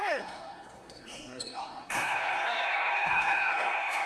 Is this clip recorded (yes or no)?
no